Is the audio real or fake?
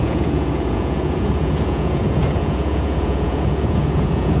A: fake